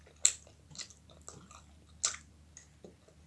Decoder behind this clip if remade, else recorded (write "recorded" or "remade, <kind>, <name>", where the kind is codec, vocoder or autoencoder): recorded